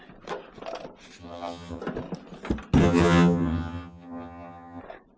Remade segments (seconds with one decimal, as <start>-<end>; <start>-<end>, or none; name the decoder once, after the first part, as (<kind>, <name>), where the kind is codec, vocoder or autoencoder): 1.2-1.8 (vocoder, HiFi-GAN); 2.8-4.8